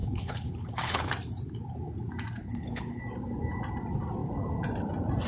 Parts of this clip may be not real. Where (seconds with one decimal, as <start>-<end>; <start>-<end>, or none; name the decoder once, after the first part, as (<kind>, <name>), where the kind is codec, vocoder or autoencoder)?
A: 0.0-1.1 (codec, HILCodec); 2.4-3.0